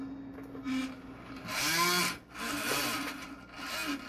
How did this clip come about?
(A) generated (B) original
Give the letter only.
B